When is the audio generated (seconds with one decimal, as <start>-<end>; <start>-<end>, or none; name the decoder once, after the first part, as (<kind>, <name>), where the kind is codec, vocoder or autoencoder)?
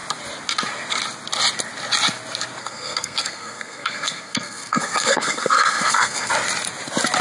2.6-6.3 (codec, SNAC)